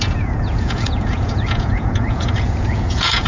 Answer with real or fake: fake